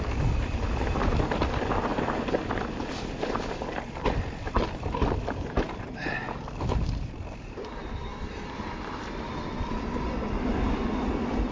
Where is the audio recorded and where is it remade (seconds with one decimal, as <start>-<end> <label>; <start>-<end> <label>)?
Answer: 0.0-1.9 remade; 1.9-2.9 recorded; 2.9-11.5 remade